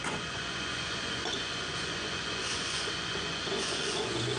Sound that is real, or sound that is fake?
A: fake